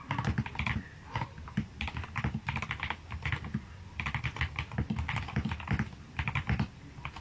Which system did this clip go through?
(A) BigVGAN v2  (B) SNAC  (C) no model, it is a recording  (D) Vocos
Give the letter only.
C